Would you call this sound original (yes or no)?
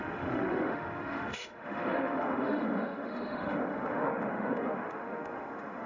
no